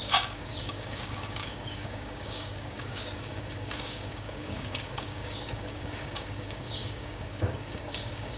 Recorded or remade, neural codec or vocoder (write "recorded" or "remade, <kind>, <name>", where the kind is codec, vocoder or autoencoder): remade, codec, DAC